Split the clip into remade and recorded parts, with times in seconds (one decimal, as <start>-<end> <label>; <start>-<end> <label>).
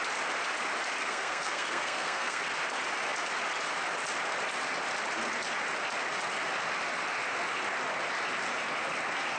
0.0-1.0 recorded; 1.0-2.4 remade; 2.4-9.4 recorded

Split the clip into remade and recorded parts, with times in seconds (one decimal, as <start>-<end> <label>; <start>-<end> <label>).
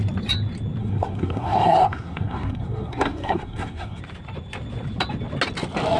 0.0-0.8 recorded; 0.8-4.0 remade; 4.0-6.0 recorded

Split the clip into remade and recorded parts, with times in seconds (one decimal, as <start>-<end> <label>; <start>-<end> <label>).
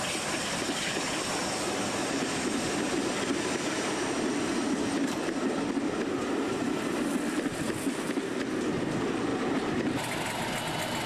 0.0-11.1 recorded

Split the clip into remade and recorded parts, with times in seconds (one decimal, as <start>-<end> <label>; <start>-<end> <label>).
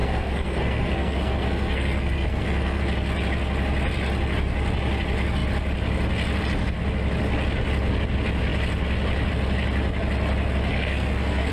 0.0-2.8 remade; 2.8-10.7 recorded; 10.7-11.5 remade